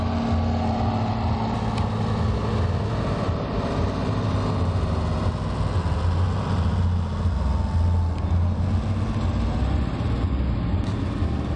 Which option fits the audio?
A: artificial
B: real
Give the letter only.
B